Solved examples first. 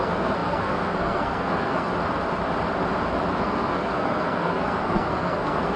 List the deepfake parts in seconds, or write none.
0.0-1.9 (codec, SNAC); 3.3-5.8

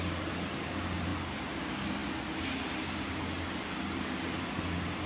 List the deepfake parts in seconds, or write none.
none

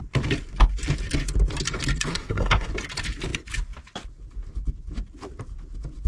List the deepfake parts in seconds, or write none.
2.1-2.7 (codec, SNAC)